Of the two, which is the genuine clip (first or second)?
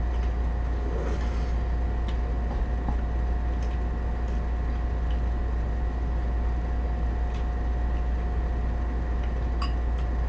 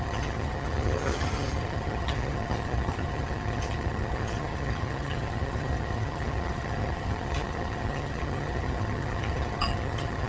first